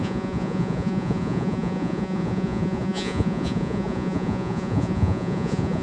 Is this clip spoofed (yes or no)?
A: yes